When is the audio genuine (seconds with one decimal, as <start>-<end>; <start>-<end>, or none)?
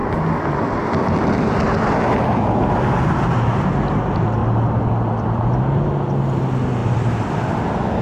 0.0-4.4; 5.4-6.8; 7.6-8.0